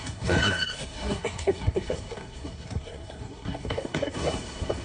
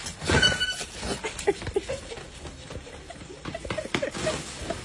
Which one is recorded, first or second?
second